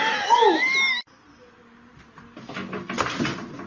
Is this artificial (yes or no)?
no